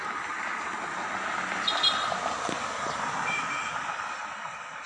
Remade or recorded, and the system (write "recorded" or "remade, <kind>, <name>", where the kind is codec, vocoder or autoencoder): recorded